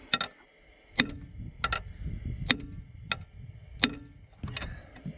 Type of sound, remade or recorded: recorded